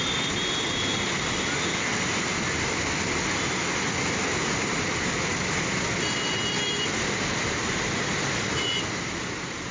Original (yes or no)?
yes